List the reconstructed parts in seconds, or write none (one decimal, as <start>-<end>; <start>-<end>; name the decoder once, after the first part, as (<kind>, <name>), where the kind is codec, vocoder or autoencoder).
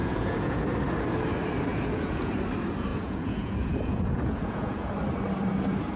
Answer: 0.0-0.6 (vocoder, Vocos); 1.7-2.3; 2.9-4.9